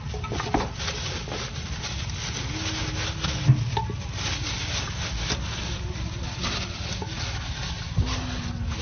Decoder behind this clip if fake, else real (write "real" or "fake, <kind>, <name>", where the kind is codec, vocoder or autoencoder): real